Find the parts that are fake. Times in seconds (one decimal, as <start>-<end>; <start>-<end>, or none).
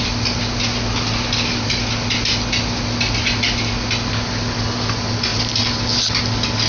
none